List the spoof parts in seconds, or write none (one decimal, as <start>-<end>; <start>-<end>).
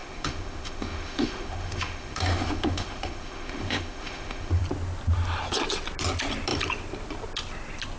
0.0-4.6